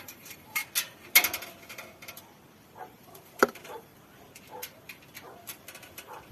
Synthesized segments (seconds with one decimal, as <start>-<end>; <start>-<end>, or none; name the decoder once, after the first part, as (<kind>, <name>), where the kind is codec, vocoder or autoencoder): 0.0-0.6 (vocoder, BigVGAN v2); 2.8-3.9